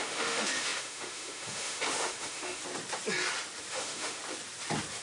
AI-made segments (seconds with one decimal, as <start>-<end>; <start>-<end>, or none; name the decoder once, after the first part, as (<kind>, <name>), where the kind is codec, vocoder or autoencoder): 0.0-2.6 (autoencoder, DAC-VAE); 3.7-4.2